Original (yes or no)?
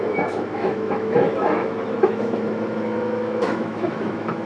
no